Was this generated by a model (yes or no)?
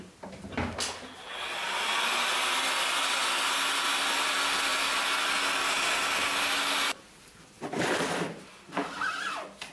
no